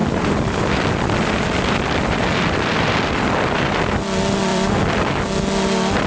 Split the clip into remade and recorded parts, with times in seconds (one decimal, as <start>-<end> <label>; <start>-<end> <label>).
0.0-3.7 remade; 3.7-4.5 recorded; 4.5-5.2 remade; 5.2-6.1 recorded